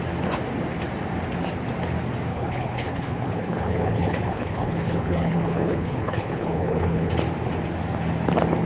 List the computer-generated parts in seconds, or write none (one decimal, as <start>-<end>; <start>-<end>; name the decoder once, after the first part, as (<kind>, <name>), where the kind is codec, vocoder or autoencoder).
2.3-7.1 (codec, HILCodec)